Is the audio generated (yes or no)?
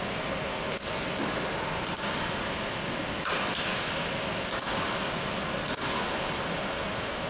no